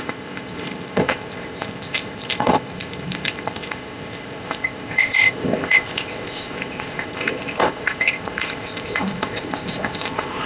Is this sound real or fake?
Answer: fake